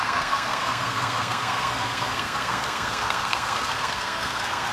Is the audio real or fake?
fake